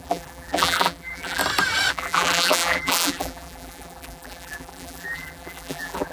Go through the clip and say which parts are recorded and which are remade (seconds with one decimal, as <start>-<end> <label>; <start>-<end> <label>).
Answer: 0.0-1.4 remade; 1.4-1.9 recorded; 1.9-6.1 remade